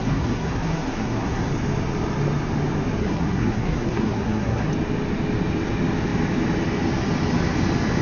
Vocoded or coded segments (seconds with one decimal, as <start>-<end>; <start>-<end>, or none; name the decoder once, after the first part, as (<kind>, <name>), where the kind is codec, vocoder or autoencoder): 0.0-1.5 (codec, SNAC); 3.0-4.7